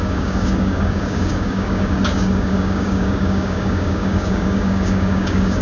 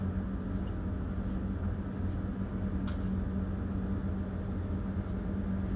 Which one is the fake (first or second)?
first